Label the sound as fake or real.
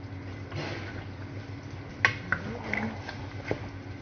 real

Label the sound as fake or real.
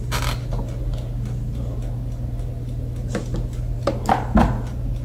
real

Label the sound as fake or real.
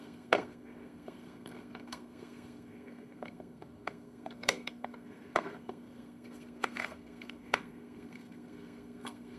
fake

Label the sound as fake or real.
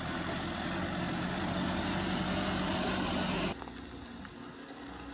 real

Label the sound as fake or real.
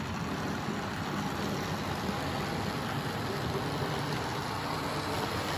real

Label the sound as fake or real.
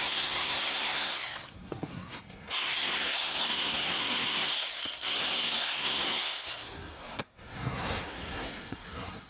fake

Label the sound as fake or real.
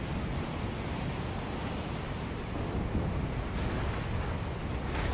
real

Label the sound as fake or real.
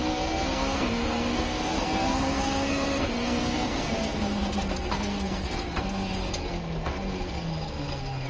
fake